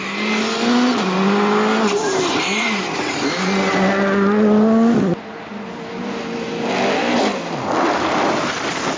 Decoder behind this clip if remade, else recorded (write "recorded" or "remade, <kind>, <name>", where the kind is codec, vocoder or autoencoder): recorded